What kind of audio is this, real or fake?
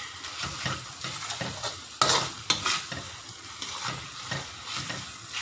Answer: real